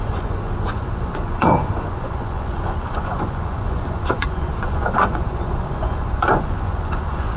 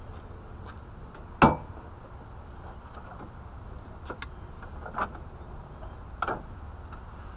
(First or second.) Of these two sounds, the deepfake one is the first